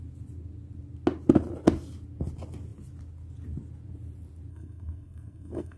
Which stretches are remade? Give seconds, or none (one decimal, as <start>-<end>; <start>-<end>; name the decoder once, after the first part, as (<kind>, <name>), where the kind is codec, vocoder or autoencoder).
4.5-5.8 (codec, SNAC)